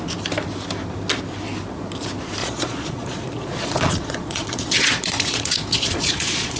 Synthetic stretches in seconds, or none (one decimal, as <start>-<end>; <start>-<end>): 2.4-6.6